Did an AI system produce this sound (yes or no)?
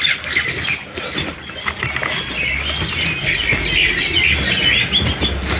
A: no